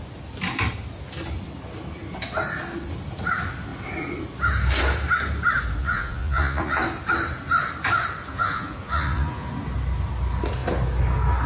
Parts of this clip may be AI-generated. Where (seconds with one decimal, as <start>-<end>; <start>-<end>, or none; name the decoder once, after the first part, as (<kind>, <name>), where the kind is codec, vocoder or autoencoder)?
5.8-6.8 (vocoder, Vocos); 8.3-9.5